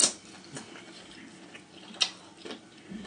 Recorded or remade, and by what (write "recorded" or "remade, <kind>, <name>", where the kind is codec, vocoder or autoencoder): recorded